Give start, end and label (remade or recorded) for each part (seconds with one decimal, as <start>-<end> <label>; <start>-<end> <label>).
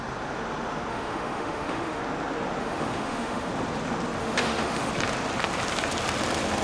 0.0-0.9 recorded; 0.9-2.0 remade; 2.0-2.6 recorded; 2.6-3.5 remade; 3.5-4.2 recorded; 4.2-4.9 remade; 4.9-6.6 recorded